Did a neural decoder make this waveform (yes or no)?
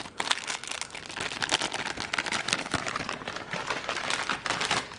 no